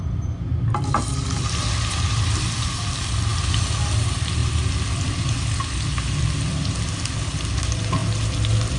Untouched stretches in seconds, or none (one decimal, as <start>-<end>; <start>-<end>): 0.0-8.8